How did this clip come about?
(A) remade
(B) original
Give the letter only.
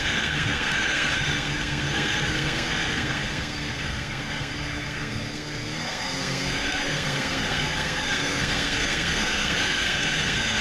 A